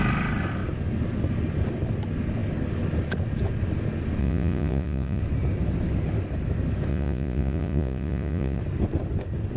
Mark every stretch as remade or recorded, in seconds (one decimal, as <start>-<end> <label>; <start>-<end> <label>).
0.0-4.2 recorded; 4.2-5.2 remade; 5.2-6.9 recorded; 6.9-8.6 remade; 8.6-9.6 recorded